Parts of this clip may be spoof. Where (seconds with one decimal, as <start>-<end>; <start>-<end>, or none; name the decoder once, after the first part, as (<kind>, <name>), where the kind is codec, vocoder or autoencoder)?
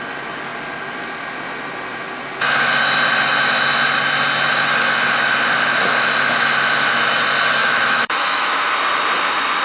7.6-8.7 (autoencoder, DAC-VAE)